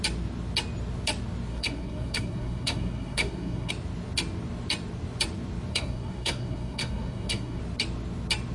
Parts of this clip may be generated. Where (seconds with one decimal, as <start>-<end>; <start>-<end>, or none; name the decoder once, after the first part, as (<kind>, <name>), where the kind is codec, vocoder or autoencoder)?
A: 1.5-3.7 (codec, SNAC); 5.7-7.6